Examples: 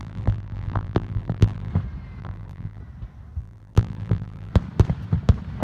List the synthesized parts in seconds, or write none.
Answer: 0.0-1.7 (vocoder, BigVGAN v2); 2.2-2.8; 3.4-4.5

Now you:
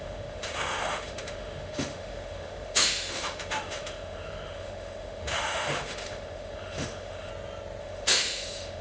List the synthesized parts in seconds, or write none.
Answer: 0.0-7.3 (autoencoder, DAC-VAE); 7.8-8.8